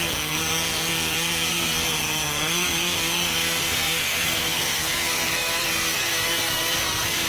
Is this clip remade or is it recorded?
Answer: remade